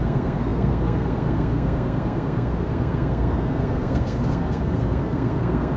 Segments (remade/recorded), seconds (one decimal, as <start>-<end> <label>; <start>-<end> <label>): 0.0-5.8 remade